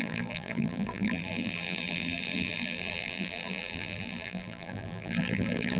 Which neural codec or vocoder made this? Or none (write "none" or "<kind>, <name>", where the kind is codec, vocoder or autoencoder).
vocoder, BigVGAN v2